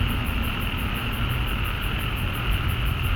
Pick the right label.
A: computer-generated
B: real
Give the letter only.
B